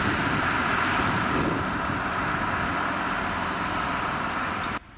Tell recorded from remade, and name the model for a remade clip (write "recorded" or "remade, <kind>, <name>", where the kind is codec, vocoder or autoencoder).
recorded